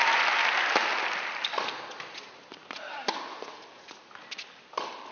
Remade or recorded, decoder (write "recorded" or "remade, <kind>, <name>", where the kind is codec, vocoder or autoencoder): recorded